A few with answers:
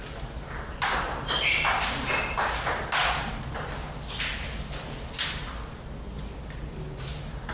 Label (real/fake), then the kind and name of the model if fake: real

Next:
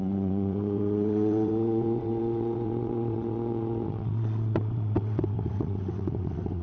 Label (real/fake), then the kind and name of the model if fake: fake, vocoder, WaveNeXt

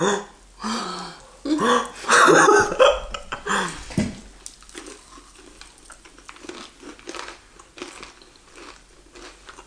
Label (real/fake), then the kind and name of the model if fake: real